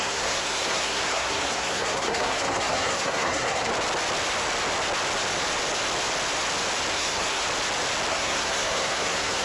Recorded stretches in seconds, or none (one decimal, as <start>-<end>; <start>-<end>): 3.7-6.9; 7.4-8.1